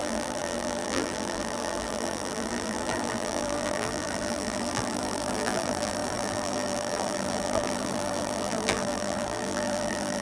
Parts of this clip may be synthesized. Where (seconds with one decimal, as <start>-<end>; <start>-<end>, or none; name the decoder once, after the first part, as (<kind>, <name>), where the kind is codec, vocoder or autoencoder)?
0.0-10.2 (vocoder, BigVGAN v2)